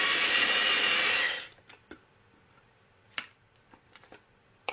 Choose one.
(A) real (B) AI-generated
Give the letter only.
B